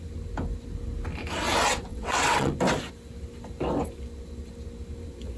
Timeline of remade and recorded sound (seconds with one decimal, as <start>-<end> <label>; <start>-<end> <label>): 0.0-1.9 recorded; 1.9-2.5 remade; 2.5-5.4 recorded